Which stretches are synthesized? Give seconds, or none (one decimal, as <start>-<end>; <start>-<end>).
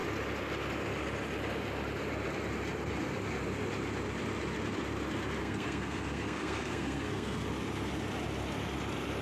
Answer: 5.4-7.5